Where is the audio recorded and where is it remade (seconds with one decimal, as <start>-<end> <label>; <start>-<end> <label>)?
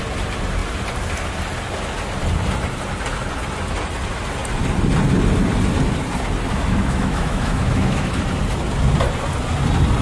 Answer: 0.0-6.5 recorded; 6.5-8.2 remade; 8.2-10.0 recorded